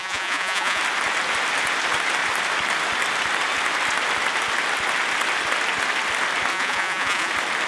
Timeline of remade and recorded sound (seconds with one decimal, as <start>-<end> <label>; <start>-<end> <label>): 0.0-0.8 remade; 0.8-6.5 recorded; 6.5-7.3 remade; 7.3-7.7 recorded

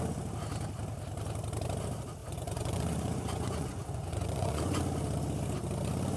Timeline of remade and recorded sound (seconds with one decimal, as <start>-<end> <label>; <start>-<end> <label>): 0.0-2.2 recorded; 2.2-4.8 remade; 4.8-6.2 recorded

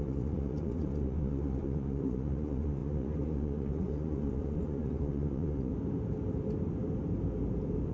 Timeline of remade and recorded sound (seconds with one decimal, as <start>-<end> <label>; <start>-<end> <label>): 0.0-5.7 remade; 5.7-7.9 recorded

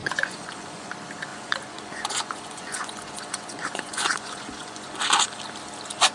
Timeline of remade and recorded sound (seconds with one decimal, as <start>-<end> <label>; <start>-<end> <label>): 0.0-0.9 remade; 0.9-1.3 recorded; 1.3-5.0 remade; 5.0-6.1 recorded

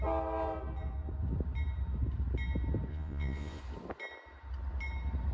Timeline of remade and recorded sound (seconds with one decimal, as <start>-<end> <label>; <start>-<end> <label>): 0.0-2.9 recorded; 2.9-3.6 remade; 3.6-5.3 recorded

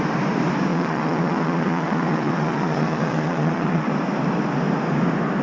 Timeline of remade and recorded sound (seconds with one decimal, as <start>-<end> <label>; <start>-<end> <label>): 0.0-0.7 recorded; 0.7-3.9 remade; 3.9-5.4 recorded

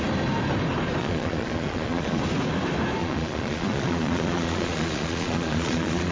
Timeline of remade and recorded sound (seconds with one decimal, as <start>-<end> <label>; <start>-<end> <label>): 0.0-1.0 recorded; 1.0-2.2 remade; 2.2-3.0 recorded; 3.0-6.1 remade

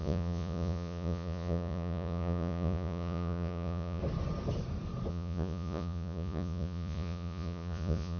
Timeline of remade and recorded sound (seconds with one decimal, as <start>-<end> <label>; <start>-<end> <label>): 0.0-4.0 remade; 4.0-5.1 recorded; 5.1-8.2 remade